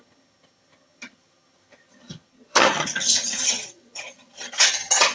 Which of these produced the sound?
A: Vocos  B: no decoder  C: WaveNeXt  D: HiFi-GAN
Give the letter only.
D